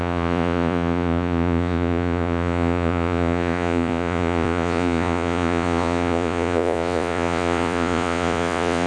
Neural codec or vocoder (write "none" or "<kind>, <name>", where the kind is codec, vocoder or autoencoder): vocoder, Vocos